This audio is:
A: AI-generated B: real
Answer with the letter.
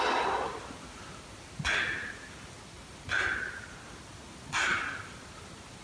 B